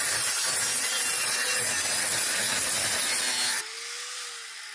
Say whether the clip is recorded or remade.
recorded